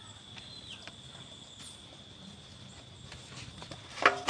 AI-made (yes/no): no